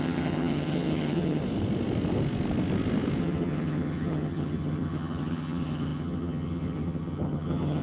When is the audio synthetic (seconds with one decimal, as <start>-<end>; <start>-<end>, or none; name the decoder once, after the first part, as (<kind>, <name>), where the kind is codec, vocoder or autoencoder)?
0.0-1.4 (vocoder, HiFi-GAN); 3.2-7.8